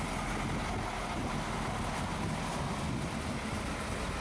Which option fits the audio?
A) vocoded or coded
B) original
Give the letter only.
B